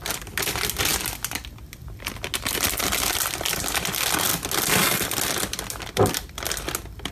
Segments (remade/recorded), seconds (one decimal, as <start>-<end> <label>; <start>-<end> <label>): 0.0-7.1 recorded